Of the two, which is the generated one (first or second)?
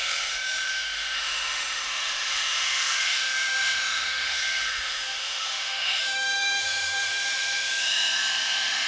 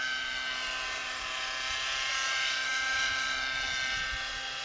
first